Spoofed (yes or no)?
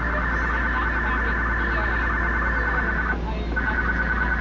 no